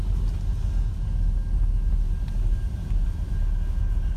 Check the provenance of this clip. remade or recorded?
recorded